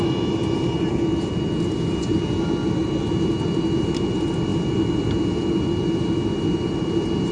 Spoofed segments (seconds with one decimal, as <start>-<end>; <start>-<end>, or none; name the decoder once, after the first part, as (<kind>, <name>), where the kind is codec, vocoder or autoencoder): none